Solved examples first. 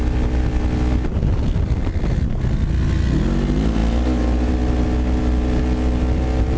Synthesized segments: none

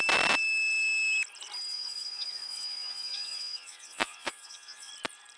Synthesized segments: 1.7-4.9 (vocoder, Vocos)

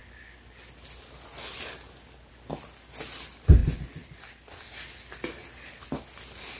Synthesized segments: none

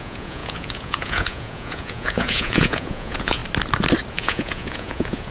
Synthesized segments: 0.0-3.4 (vocoder, Vocos); 4.1-5.3

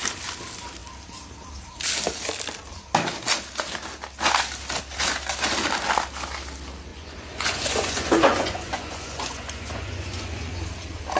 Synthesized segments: 6.9-10.6 (vocoder, Vocos)

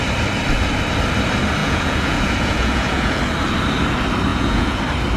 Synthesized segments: 1.6-3.2 (vocoder, Vocos); 4.3-4.8